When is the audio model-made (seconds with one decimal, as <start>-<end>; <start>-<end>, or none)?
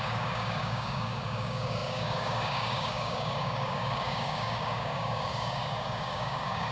0.0-6.7